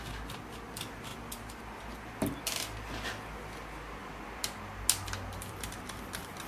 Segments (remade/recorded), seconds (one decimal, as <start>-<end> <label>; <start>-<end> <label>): 0.0-6.5 recorded